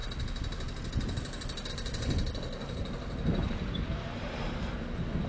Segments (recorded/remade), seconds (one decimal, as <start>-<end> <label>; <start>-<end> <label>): 0.0-2.5 recorded; 2.5-4.4 remade; 4.4-5.3 recorded

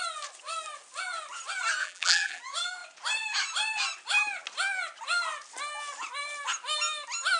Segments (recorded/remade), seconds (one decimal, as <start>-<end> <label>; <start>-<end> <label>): 0.0-1.8 recorded; 1.8-2.4 remade; 2.4-7.4 recorded